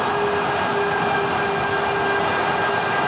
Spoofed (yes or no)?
no